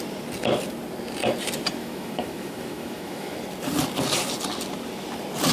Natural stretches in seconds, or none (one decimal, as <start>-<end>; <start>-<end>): 0.0-1.8; 3.4-5.5

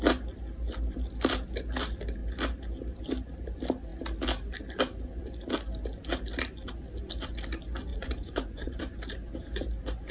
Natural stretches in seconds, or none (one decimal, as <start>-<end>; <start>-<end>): 0.0-7.9; 8.8-10.1

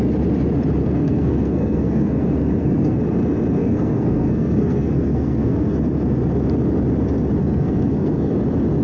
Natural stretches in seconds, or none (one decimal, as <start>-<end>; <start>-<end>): 0.0-0.8; 3.0-3.6; 5.7-7.4; 8.3-8.8

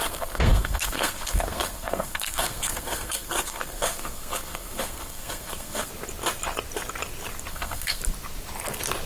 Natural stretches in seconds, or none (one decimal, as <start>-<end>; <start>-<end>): 5.9-7.5; 8.0-9.1